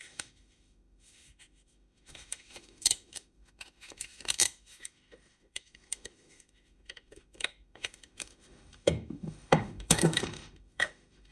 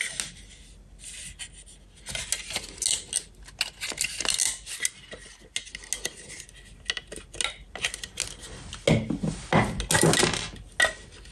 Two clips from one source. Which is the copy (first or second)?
first